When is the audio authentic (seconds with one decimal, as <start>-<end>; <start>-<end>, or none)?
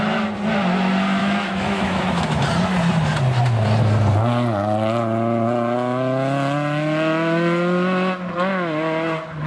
0.0-1.2; 2.4-9.5